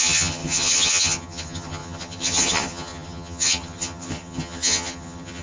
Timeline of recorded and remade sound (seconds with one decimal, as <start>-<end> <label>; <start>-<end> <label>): 0.0-5.4 remade